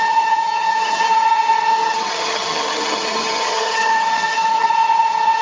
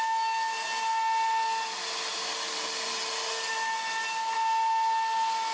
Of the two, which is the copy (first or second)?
first